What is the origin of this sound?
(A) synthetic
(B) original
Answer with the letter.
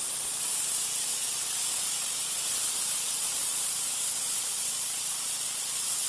A